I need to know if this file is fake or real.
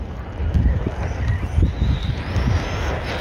real